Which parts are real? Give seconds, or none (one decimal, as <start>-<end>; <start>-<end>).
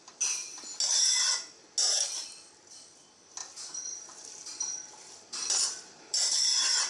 0.0-3.4